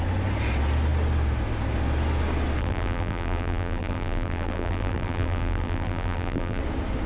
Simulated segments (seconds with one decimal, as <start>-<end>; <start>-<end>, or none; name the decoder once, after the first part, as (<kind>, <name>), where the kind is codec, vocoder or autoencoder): 2.6-6.6 (vocoder, BigVGAN v2)